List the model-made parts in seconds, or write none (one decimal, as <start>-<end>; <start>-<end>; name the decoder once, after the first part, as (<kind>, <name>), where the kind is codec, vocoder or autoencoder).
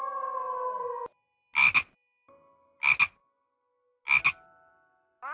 none